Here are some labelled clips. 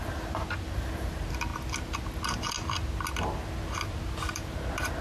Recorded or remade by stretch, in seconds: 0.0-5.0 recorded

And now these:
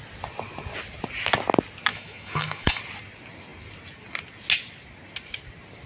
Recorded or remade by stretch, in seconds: 0.0-1.9 recorded; 1.9-2.8 remade; 2.8-5.9 recorded

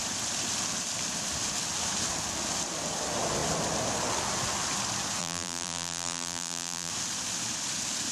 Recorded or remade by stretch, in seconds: 0.0-5.2 recorded; 5.2-6.9 remade; 6.9-8.1 recorded

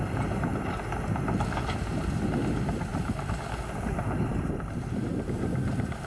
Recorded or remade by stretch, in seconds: 0.0-2.9 recorded; 2.9-3.6 remade; 3.6-4.3 recorded; 4.3-6.1 remade

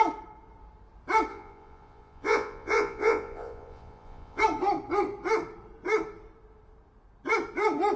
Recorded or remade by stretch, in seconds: 0.0-1.3 recorded; 1.3-4.4 remade; 4.4-8.0 recorded

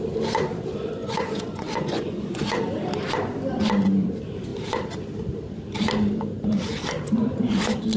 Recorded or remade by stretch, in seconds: 0.0-1.0 recorded; 1.0-2.6 remade; 2.6-8.0 recorded